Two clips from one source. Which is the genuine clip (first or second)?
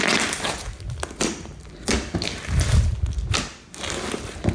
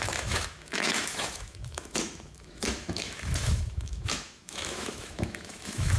first